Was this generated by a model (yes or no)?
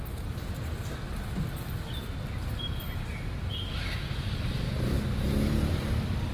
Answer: no